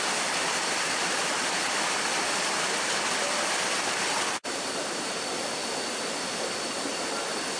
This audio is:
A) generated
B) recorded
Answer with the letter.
B